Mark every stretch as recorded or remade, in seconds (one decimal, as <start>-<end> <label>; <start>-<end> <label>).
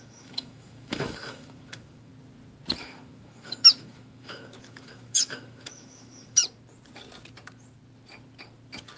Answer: 0.0-2.1 remade; 2.1-2.8 recorded; 2.8-6.4 remade; 6.4-9.0 recorded